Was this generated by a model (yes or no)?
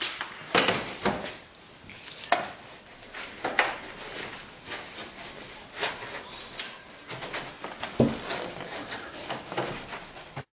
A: no